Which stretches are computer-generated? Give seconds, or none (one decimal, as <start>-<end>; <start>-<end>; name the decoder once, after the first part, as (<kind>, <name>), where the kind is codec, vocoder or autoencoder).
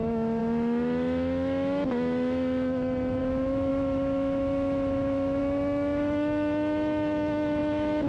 0.0-8.1 (autoencoder, DAC-VAE)